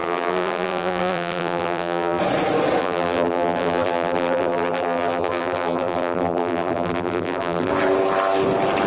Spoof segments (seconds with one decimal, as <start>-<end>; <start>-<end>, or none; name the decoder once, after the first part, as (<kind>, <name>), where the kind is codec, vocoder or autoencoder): 0.0-2.2 (vocoder, BigVGAN v2); 2.8-7.7